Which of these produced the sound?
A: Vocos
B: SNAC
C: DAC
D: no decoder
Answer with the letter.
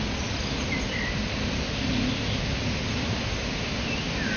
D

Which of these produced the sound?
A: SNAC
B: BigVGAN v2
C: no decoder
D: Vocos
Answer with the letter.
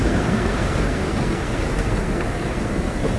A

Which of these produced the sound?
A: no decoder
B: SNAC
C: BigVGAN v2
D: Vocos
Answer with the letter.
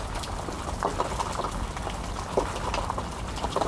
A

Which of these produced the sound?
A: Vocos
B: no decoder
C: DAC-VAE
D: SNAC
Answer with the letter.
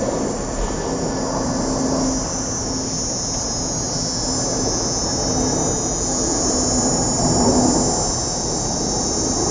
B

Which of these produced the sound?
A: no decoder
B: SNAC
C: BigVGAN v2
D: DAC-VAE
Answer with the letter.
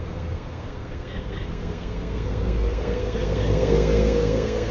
B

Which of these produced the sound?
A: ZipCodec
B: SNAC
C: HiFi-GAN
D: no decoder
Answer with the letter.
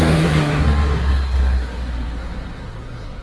B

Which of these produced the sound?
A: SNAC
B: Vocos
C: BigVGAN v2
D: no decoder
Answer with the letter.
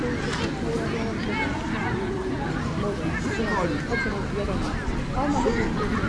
D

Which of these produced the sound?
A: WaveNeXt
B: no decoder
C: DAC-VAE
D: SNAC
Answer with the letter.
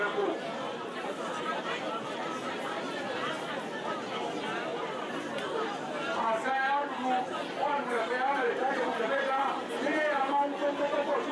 B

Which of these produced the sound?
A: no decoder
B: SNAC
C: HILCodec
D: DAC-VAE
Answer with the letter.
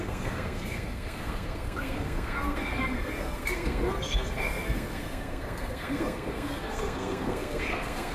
B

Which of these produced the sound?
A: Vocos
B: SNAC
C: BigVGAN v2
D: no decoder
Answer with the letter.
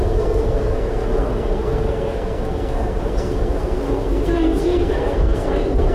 B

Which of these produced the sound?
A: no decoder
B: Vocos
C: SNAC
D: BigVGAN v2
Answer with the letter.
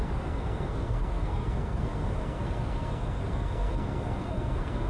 C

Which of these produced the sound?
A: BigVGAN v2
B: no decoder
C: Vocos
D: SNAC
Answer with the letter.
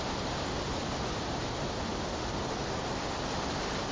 B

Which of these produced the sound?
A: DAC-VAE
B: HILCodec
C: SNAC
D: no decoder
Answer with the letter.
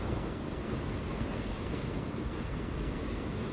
C